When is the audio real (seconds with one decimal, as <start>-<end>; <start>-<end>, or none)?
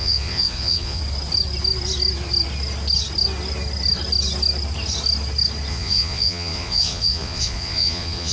1.0-5.7